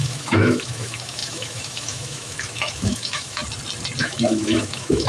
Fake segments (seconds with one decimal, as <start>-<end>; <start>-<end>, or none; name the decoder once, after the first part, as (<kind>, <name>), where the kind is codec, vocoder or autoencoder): 0.0-3.4 (autoencoder, DAC-VAE); 4.0-5.1